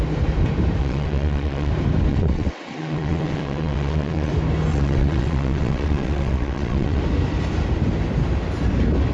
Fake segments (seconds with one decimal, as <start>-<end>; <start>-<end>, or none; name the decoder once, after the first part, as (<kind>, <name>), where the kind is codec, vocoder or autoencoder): 0.8-1.7 (vocoder, WaveNeXt); 2.1-4.3; 4.7-7.0